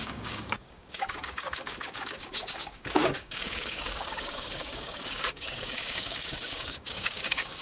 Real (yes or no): no